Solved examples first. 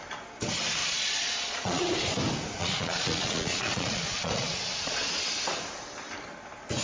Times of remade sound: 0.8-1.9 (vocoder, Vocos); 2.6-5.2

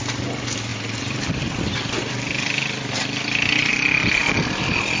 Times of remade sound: 0.7-3.7 (vocoder, BigVGAN v2); 4.2-5.0

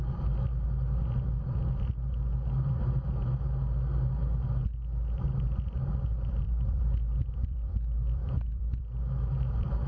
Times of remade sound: 6.1-8.8 (vocoder, BigVGAN v2)

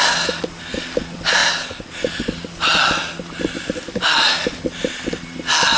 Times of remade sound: none

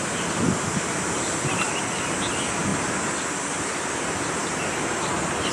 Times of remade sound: 2.7-3.8 (vocoder, BigVGAN v2)

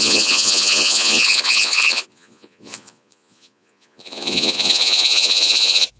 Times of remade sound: 0.0-6.0 (vocoder, Vocos)

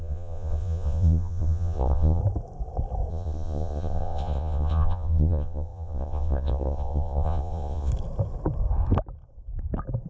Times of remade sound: 0.0-2.2 (vocoder, Vocos); 3.1-7.9

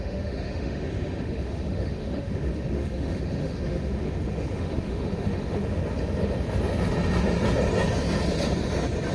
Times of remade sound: 0.0-5.8 (autoencoder, DAC-VAE)